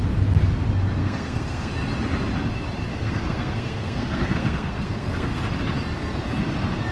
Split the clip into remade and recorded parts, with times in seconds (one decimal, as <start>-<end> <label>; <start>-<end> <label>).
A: 0.0-1.0 recorded; 1.0-1.7 remade; 1.7-2.9 recorded; 2.9-5.4 remade; 5.4-6.9 recorded